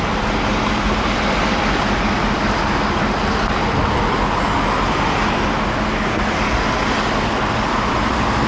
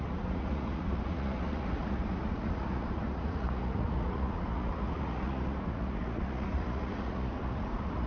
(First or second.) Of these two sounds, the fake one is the second